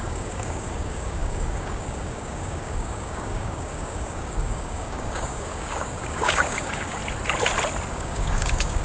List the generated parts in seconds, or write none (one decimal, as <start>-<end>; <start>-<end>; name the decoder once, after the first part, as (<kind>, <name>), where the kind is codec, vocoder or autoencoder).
0.0-7.0 (codec, DAC); 7.9-8.8